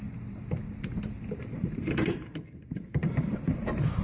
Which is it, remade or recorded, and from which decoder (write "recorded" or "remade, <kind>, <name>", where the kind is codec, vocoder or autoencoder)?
remade, vocoder, BigVGAN v2